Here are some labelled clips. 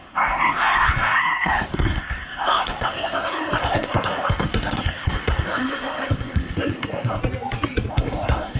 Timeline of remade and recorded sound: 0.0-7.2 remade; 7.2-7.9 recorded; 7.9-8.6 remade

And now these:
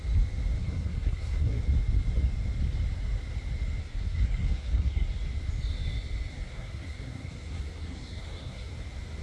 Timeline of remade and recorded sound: 0.0-0.6 recorded; 0.6-1.6 remade; 1.6-3.8 recorded; 3.8-5.2 remade; 5.2-6.3 recorded; 6.3-8.7 remade; 8.7-9.2 recorded